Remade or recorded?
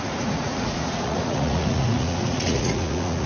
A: remade